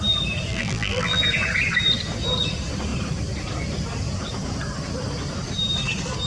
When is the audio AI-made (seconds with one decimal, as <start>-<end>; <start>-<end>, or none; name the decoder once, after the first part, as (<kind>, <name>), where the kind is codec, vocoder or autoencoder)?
0.5-1.2 (vocoder, BigVGAN v2)